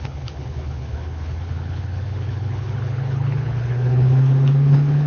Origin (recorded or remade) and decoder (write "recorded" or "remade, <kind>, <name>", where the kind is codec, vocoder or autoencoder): remade, codec, HILCodec